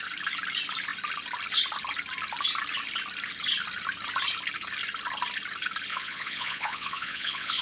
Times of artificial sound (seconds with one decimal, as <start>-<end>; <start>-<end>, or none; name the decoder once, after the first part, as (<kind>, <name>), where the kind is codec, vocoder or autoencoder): 5.9-7.6 (vocoder, Vocos)